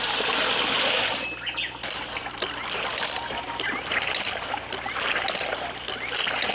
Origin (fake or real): real